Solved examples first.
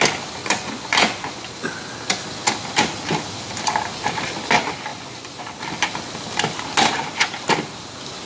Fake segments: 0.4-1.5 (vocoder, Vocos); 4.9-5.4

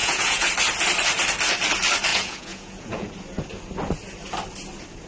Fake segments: 0.0-0.5 (vocoder, Vocos); 2.1-3.1